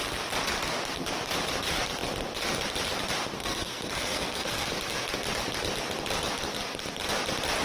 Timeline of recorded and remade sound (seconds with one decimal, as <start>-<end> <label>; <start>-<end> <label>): 0.0-3.4 recorded; 3.4-4.7 remade; 4.7-7.6 recorded